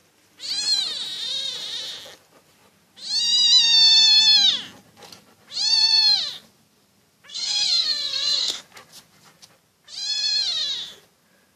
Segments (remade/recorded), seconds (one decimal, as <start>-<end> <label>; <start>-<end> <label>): 0.0-7.3 recorded; 7.3-8.6 remade; 8.6-11.6 recorded